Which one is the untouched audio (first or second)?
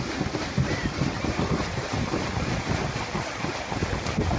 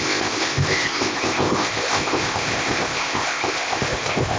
first